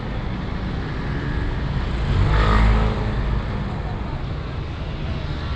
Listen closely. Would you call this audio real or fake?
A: real